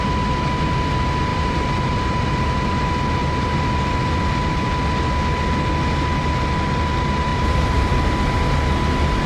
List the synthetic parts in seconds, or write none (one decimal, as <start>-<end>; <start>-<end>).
1.3-2.7; 3.2-3.7; 7.3-7.9

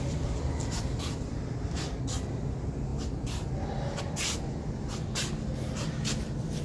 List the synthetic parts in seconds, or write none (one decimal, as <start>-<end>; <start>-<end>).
none

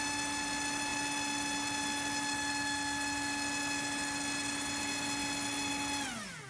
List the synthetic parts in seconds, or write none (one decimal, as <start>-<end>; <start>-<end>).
none